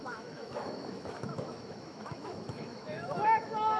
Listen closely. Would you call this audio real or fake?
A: fake